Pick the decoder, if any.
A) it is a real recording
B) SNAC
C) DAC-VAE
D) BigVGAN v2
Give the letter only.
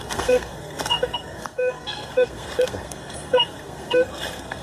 B